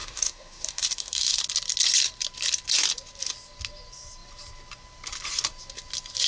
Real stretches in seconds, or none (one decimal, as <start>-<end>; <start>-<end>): 1.4-6.3